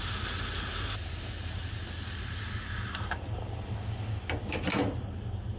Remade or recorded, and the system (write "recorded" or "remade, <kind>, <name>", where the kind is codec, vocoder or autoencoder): recorded